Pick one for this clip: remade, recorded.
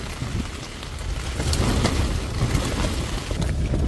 recorded